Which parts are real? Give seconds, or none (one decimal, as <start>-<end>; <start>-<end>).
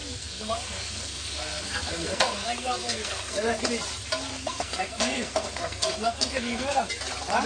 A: 3.7-4.3; 6.9-7.5